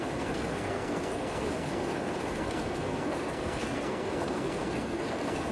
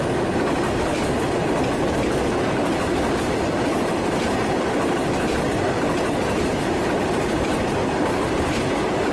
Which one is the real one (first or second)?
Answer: second